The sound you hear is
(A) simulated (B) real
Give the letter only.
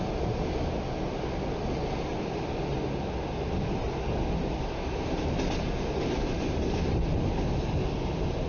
B